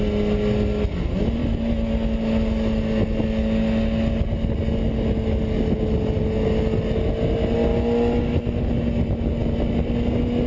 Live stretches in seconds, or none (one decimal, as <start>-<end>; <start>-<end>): 0.0-10.5